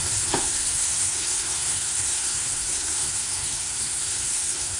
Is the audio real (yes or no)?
no